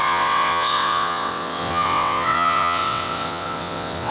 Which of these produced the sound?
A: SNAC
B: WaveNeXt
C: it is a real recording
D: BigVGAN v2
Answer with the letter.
B